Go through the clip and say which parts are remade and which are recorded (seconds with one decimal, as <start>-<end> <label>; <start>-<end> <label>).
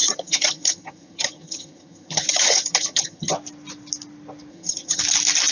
0.0-3.3 remade; 3.3-4.5 recorded; 4.5-5.0 remade; 5.0-5.5 recorded